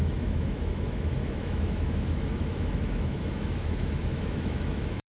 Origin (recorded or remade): remade